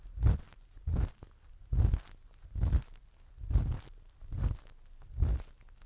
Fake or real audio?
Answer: real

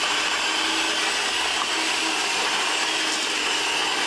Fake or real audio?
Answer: real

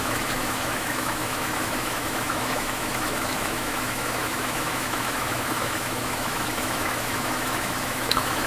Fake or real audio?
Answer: fake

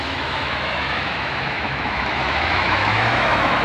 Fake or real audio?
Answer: fake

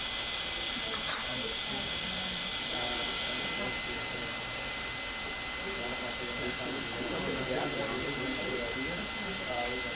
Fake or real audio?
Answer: real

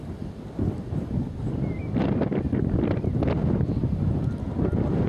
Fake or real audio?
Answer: real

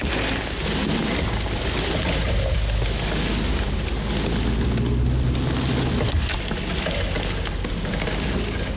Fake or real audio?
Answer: real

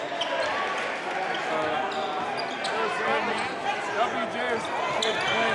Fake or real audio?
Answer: real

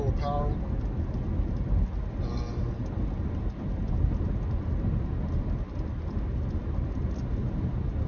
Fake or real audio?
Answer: real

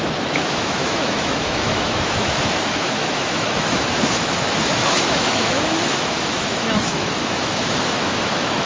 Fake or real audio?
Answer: fake